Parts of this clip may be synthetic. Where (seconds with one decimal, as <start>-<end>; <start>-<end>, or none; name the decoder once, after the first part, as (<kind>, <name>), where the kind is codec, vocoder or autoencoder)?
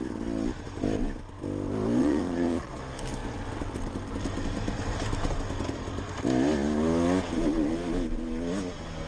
2.0-2.7 (vocoder, Vocos)